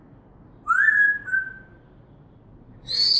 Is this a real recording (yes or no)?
yes